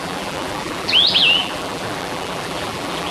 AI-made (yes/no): yes